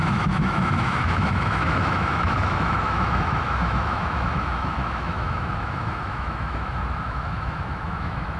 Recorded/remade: remade